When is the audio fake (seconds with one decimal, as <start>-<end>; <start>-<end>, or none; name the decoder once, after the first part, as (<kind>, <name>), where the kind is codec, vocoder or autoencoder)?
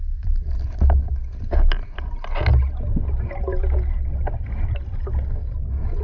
none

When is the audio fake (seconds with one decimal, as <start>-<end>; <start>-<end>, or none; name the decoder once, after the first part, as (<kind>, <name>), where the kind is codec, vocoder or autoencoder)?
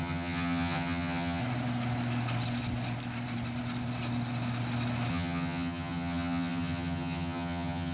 0.0-1.4 (vocoder, HiFi-GAN); 5.1-7.9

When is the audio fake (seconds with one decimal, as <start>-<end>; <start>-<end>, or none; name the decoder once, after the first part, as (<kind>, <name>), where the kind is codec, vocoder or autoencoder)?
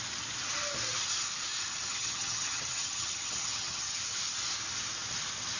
1.9-4.0 (vocoder, HiFi-GAN)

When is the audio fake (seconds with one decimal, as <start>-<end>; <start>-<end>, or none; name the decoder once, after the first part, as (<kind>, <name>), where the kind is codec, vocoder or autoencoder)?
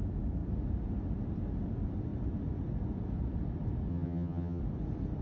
3.9-4.6 (vocoder, HiFi-GAN)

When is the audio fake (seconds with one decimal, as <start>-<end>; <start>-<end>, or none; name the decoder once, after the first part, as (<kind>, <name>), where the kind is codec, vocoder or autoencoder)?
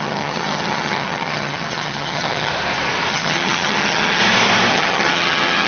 0.0-2.5 (vocoder, HiFi-GAN); 3.1-4.2; 4.7-5.7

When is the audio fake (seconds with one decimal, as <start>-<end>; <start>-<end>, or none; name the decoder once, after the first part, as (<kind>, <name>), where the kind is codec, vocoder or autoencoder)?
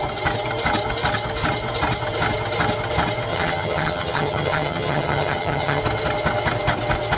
3.3-5.8 (vocoder, HiFi-GAN)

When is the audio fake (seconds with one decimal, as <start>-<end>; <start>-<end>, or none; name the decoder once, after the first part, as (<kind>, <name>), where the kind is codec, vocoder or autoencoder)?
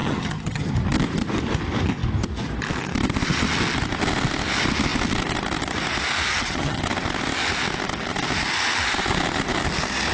0.0-0.7 (vocoder, HiFi-GAN); 6.3-6.8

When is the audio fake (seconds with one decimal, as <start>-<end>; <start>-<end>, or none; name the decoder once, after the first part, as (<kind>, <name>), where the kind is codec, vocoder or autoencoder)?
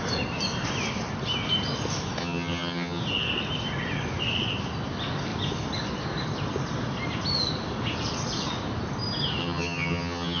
2.2-3.0 (vocoder, HiFi-GAN); 9.4-10.4